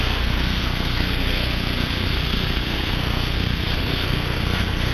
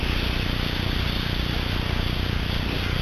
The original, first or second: second